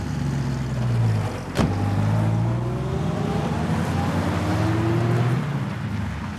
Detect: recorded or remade recorded